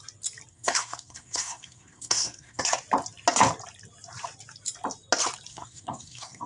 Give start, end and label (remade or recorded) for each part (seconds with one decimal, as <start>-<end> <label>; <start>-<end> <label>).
0.0-0.5 recorded; 0.5-2.6 remade; 2.6-5.5 recorded; 5.5-6.5 remade

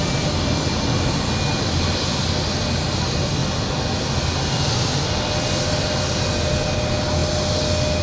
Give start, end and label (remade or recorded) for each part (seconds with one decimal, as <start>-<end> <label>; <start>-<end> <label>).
0.0-8.0 recorded

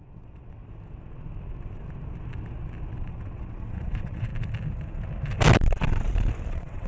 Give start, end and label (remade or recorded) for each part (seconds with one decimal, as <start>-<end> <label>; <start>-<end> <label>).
0.0-0.6 remade; 0.6-2.9 recorded; 2.9-4.3 remade; 4.3-6.5 recorded; 6.5-6.9 remade

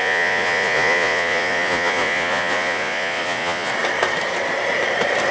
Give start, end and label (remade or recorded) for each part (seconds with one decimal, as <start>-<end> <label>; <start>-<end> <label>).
0.0-3.7 remade; 3.7-5.3 recorded